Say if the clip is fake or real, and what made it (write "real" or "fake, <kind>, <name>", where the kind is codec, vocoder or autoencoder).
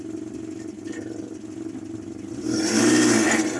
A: real